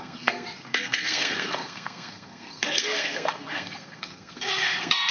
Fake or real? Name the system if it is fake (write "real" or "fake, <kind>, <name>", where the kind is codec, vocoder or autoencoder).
fake, codec, SNAC